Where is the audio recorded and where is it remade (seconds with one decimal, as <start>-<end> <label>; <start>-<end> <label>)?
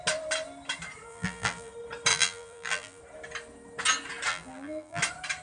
0.0-1.1 recorded; 1.1-1.7 remade; 1.7-2.1 recorded; 2.1-3.0 remade; 3.0-4.3 recorded; 4.3-5.0 remade; 5.0-5.4 recorded